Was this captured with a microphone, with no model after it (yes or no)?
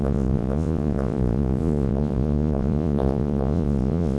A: no